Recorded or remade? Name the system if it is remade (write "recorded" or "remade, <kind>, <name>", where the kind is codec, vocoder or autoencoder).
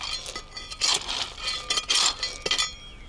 recorded